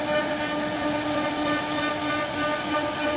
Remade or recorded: recorded